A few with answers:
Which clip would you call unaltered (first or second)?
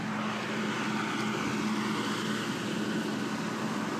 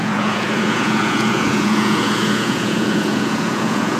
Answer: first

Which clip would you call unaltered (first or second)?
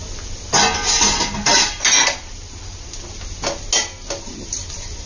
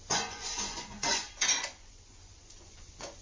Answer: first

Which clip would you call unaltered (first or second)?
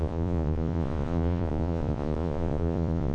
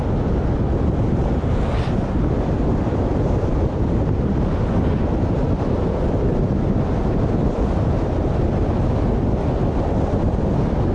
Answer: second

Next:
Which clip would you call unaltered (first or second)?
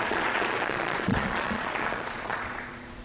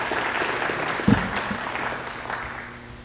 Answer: second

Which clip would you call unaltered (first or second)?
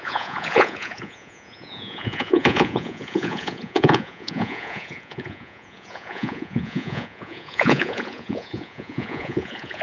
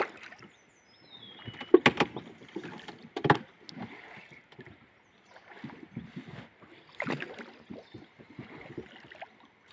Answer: second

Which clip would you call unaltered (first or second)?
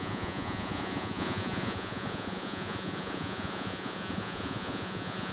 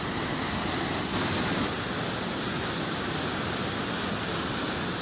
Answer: second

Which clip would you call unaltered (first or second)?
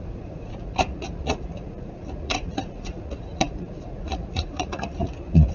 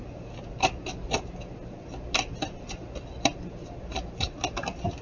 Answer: second